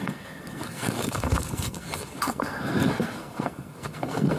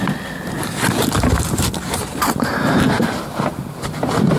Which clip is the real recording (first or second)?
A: second